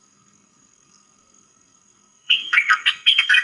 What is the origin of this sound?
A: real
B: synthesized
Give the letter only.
B